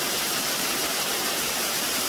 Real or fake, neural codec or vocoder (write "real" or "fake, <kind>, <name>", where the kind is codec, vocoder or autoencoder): fake, vocoder, BigVGAN v2